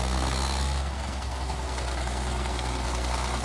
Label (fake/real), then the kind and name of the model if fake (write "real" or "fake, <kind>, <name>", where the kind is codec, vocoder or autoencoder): fake, codec, SNAC